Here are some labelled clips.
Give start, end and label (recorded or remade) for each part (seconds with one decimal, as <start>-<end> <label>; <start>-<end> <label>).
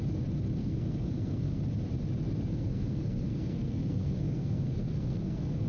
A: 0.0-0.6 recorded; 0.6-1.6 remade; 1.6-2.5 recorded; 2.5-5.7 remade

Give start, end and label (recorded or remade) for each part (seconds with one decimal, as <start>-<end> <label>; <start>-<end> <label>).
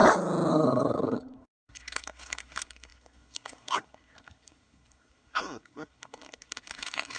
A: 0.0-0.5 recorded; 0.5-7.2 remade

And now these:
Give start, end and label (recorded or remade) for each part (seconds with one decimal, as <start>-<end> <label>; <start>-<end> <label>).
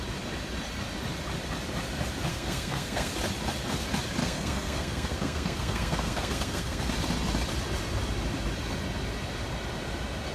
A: 0.0-2.3 recorded; 2.3-3.1 remade; 3.1-4.2 recorded; 4.2-6.9 remade; 6.9-10.3 recorded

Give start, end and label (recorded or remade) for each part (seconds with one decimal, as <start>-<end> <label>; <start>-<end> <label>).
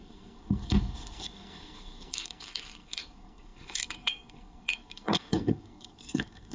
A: 0.0-6.5 remade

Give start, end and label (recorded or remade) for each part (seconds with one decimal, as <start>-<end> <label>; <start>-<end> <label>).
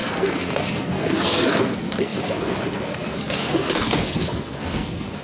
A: 0.0-5.2 remade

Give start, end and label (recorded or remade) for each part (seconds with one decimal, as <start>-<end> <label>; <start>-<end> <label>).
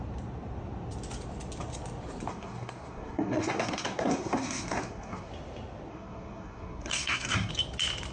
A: 0.0-2.3 recorded; 2.3-5.3 remade; 5.3-5.9 recorded; 5.9-7.5 remade; 7.5-8.1 recorded